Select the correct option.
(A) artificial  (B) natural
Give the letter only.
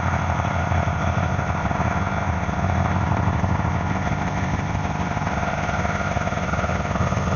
A